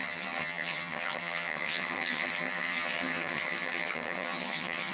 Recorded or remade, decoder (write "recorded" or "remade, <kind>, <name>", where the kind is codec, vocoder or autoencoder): remade, vocoder, HiFi-GAN